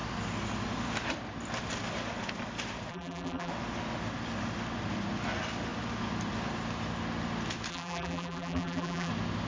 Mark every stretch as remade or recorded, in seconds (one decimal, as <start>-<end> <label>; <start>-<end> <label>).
0.0-2.9 recorded; 2.9-3.5 remade; 3.5-7.7 recorded; 7.7-9.1 remade; 9.1-9.5 recorded